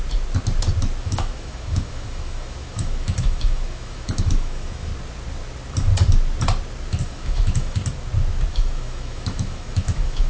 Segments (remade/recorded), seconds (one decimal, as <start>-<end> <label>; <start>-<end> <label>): 0.0-1.0 recorded; 1.0-4.9 remade; 4.9-7.0 recorded; 7.0-7.8 remade; 7.8-8.5 recorded; 8.5-10.3 remade

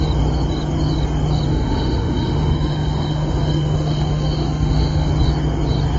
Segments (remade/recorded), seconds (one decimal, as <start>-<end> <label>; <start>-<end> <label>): 0.0-1.5 recorded; 1.5-5.1 remade; 5.1-6.0 recorded

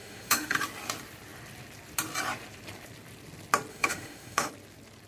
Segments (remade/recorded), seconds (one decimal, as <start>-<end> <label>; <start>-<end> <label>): 0.0-0.6 remade; 0.6-3.7 recorded; 3.7-4.5 remade; 4.5-5.1 recorded

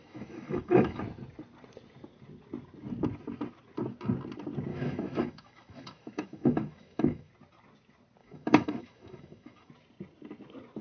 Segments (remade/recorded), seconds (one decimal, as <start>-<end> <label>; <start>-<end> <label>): 0.0-1.0 remade; 1.0-4.7 recorded; 4.7-7.3 remade; 7.3-8.2 recorded; 8.2-9.7 remade; 9.7-10.8 recorded

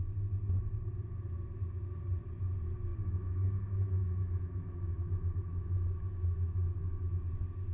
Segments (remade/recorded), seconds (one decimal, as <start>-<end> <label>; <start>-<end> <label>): 0.0-2.9 recorded; 2.9-7.1 remade; 7.1-7.7 recorded

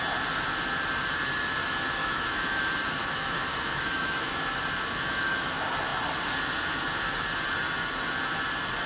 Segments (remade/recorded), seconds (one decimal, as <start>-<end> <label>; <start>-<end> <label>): 0.0-2.0 recorded; 2.0-2.6 remade; 2.6-3.0 recorded; 3.0-4.4 remade; 4.4-8.9 recorded